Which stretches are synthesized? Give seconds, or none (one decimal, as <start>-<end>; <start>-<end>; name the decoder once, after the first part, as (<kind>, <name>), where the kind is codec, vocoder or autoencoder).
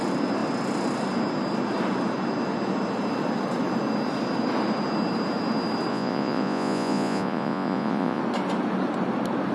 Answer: 5.9-8.2 (vocoder, Vocos)